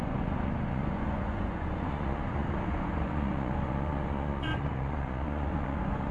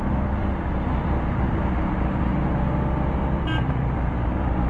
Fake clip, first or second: first